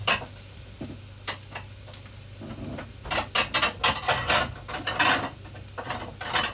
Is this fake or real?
real